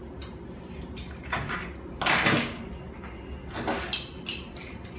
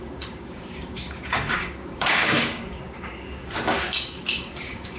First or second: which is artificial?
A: second